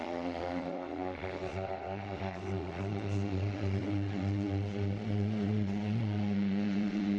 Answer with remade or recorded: remade